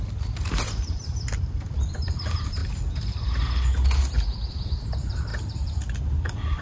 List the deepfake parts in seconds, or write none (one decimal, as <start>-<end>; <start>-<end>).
0.0-2.6; 4.5-6.6